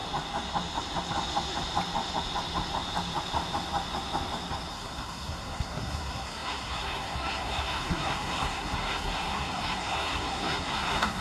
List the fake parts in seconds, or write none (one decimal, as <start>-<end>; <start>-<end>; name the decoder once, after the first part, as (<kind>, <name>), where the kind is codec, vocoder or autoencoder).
4.7-11.2 (codec, SNAC)